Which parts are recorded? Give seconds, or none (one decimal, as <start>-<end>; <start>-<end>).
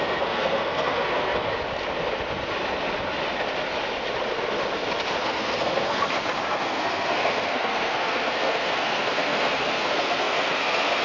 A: 1.5-5.2; 6.0-6.5